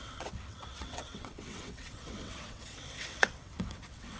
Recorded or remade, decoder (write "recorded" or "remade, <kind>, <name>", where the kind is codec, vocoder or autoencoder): remade, vocoder, WaveNeXt